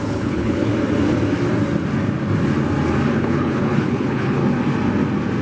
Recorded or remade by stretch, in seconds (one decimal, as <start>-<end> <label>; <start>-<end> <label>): 0.0-0.7 remade; 0.7-3.1 recorded; 3.1-4.4 remade; 4.4-5.4 recorded